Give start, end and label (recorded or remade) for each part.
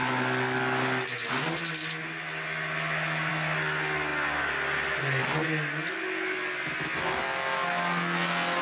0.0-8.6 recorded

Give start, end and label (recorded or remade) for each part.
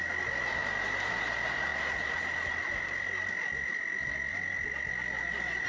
0.0-5.7 recorded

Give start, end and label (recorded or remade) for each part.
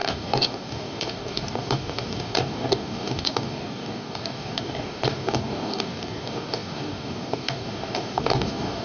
0.0-8.8 remade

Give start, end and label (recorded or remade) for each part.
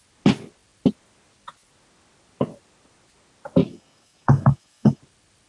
0.0-3.6 recorded; 3.6-5.0 remade; 5.0-5.5 recorded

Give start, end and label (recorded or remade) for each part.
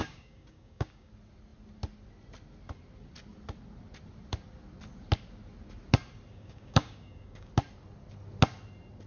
0.0-1.1 remade; 1.1-6.3 recorded; 6.3-7.5 remade; 7.5-9.1 recorded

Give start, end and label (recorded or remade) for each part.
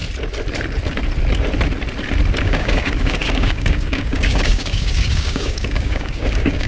0.0-2.4 recorded; 2.4-6.7 remade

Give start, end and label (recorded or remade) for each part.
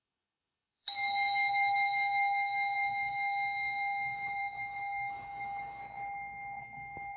0.0-5.8 remade; 5.8-6.6 recorded; 6.6-7.2 remade